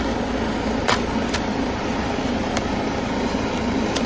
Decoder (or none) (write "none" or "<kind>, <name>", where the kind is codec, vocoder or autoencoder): none